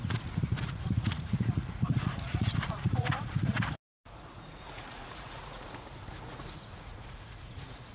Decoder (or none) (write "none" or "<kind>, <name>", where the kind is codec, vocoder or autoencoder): vocoder, Vocos